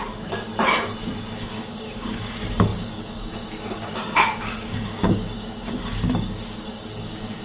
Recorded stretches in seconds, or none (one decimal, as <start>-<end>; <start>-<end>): 0.5-1.3